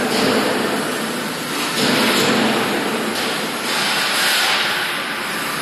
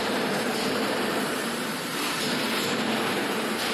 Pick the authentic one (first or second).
first